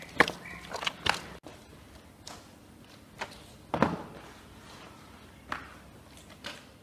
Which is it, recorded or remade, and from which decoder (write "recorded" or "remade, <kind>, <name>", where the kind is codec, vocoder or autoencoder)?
recorded